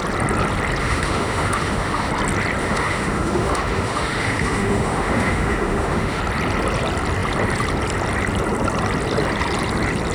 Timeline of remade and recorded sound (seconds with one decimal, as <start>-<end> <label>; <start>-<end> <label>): 0.0-0.8 recorded; 0.8-2.1 remade; 2.1-2.6 recorded; 2.6-6.2 remade; 6.2-10.1 recorded